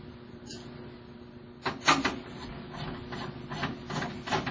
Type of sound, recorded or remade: recorded